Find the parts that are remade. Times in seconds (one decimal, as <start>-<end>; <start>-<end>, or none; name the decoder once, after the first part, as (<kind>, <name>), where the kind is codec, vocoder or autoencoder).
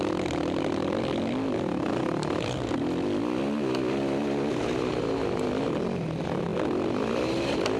none